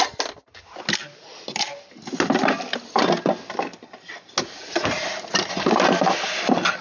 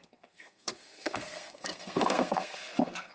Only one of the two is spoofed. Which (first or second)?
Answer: second